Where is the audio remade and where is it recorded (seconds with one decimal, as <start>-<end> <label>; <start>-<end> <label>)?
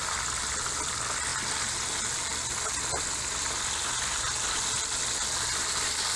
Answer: 0.0-6.2 recorded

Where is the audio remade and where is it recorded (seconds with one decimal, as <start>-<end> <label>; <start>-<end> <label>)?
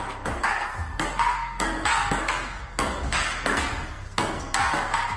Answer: 0.0-5.2 remade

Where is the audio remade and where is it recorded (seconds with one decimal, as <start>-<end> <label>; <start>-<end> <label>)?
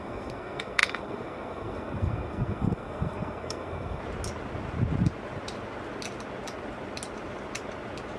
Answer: 0.0-4.0 remade; 4.0-8.2 recorded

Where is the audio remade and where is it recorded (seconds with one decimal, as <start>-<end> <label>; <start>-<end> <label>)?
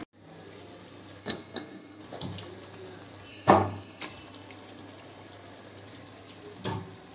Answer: 0.0-1.2 recorded; 1.2-2.0 remade; 2.0-3.3 recorded; 3.3-4.0 remade; 4.0-7.1 recorded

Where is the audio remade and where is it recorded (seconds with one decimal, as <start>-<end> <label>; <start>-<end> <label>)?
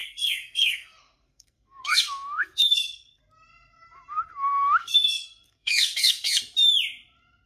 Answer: 0.0-3.2 remade; 3.2-4.8 recorded; 4.8-6.4 remade; 6.4-7.5 recorded